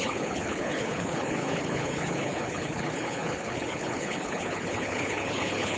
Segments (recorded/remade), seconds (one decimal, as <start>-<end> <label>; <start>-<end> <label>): 0.0-5.8 remade